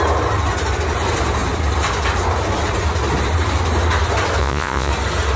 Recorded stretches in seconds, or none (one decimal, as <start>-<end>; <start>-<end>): 0.0-4.4; 4.9-5.4